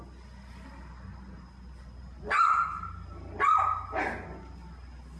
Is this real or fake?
real